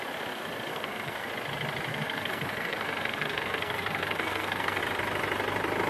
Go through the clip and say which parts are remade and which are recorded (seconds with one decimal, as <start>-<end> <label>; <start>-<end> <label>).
0.0-0.7 recorded; 0.7-1.3 remade; 1.3-1.9 recorded; 1.9-4.8 remade; 4.8-5.9 recorded